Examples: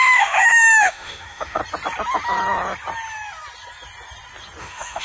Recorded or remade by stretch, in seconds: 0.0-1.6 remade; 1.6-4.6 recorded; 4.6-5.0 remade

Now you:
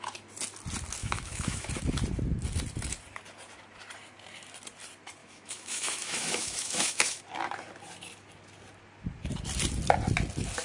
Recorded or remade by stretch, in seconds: 0.0-1.0 recorded; 1.0-1.7 remade; 1.7-5.2 recorded; 5.2-7.2 remade; 7.2-10.6 recorded

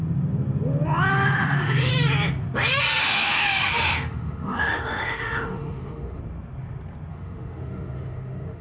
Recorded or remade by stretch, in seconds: 0.0-1.1 recorded; 1.1-1.9 remade; 1.9-3.0 recorded; 3.0-6.2 remade; 6.2-7.1 recorded; 7.1-8.6 remade

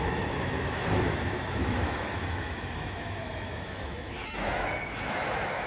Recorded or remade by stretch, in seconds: 0.0-0.8 remade; 0.8-1.5 recorded; 1.5-5.7 remade

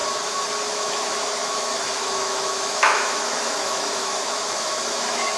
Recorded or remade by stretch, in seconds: 0.0-0.7 recorded; 0.7-5.4 remade